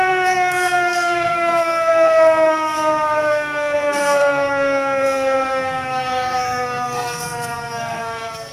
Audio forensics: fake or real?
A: fake